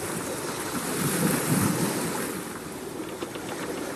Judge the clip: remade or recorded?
recorded